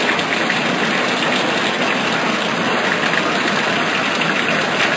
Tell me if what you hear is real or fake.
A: real